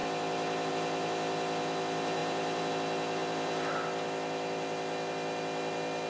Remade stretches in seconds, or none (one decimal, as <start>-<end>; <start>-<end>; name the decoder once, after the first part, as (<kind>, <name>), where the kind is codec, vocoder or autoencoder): 2.2-2.7 (vocoder, BigVGAN v2); 3.2-3.7